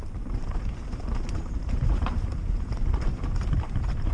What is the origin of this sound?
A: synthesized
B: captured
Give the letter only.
A